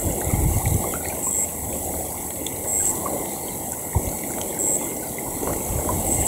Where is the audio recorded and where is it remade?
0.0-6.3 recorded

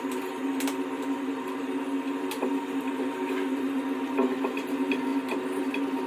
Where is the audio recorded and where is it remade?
0.0-6.1 recorded

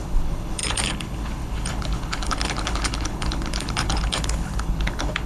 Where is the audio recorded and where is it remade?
0.0-5.3 remade

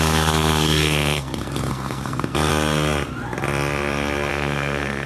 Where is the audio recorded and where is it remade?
0.0-2.5 remade; 2.5-4.3 recorded; 4.3-5.1 remade

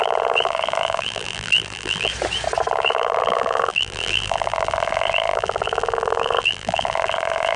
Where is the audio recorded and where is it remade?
0.0-2.1 remade; 2.1-2.7 recorded; 2.7-7.6 remade